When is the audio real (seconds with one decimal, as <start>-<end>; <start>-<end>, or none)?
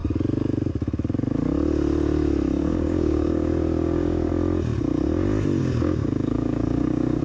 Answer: 0.0-2.6; 4.3-5.6